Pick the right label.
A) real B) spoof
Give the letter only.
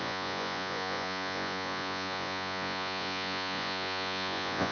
B